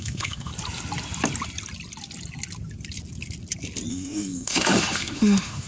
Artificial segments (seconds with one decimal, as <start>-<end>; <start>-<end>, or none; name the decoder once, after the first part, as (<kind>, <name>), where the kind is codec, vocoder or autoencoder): 0.0-0.5 (autoencoder, DAC-VAE); 3.9-5.7